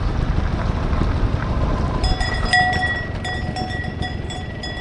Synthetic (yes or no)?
no